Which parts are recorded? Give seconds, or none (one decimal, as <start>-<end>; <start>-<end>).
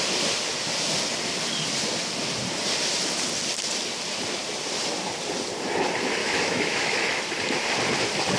0.0-6.2; 7.2-8.4